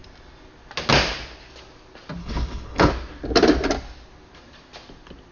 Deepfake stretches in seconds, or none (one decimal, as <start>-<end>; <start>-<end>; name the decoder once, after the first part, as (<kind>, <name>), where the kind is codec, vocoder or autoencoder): 2.2-2.9 (codec, HILCodec)